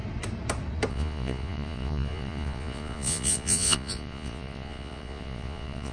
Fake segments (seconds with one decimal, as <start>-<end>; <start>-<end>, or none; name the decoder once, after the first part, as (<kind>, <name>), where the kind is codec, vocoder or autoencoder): 0.9-5.9 (vocoder, Vocos)